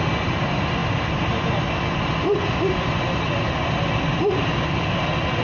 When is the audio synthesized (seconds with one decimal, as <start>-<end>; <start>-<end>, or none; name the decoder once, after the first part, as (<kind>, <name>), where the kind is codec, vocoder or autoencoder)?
none